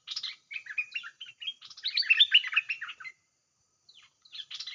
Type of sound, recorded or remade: recorded